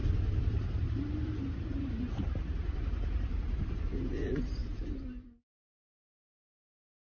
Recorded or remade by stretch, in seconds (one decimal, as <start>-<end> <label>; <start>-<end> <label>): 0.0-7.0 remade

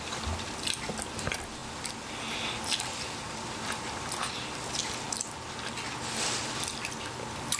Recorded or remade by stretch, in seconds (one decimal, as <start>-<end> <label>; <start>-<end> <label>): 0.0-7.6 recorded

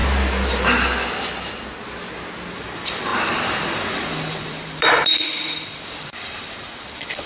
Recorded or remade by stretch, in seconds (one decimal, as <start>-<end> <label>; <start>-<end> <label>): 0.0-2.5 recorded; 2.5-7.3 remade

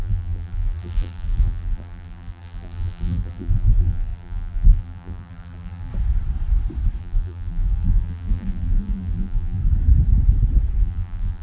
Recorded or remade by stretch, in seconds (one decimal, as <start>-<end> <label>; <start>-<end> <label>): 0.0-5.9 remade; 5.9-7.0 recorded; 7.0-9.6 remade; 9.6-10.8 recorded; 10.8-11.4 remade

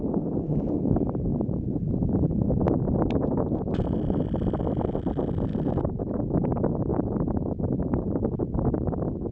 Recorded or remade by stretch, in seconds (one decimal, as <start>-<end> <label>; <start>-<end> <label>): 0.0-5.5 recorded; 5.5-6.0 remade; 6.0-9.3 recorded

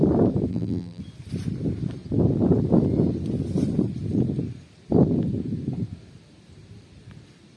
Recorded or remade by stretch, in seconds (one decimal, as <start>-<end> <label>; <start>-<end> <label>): 0.0-0.5 recorded; 0.5-1.0 remade; 1.0-7.6 recorded

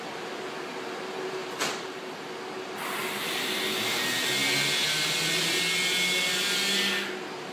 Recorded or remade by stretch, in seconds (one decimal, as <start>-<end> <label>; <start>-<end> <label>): 0.0-1.4 recorded; 1.4-2.0 remade; 2.0-3.0 recorded; 3.0-3.5 remade; 3.5-7.5 recorded